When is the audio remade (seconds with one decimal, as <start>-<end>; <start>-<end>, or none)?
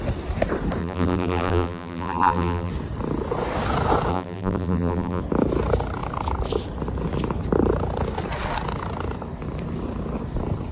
0.8-2.7; 4.1-5.2